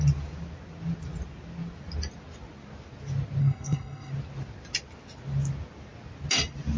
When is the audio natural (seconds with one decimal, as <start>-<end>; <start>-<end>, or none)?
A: 0.0-3.4; 4.1-6.8